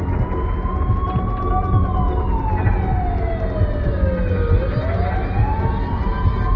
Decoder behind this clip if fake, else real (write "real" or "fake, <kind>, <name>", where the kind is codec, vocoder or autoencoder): real